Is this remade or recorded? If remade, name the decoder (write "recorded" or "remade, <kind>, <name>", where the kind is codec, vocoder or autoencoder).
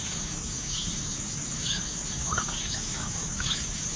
remade, codec, DAC